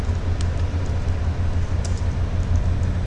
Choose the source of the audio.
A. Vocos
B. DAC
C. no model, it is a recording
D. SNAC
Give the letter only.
C